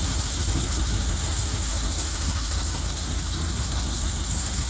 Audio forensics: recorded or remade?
remade